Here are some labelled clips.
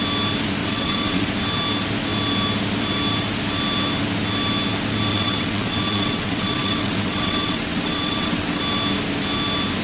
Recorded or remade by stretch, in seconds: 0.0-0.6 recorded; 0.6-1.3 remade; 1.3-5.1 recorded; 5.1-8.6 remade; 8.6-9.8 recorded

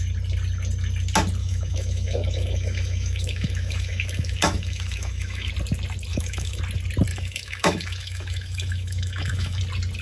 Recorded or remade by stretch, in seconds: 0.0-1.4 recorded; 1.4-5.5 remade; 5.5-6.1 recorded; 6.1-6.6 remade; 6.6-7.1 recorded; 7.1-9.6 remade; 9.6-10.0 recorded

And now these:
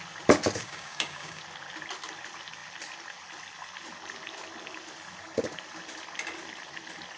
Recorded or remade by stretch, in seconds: 0.0-0.6 recorded; 0.6-1.4 remade; 1.4-7.2 recorded